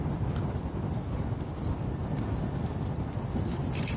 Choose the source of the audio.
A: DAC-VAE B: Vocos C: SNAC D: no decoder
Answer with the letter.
D